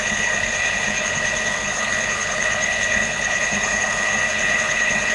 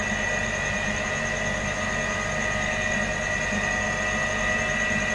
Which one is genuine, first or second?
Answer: second